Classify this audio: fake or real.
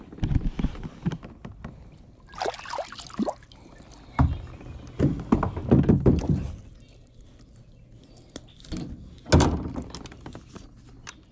real